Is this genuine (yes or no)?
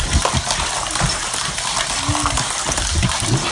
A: yes